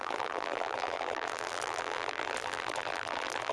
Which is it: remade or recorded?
remade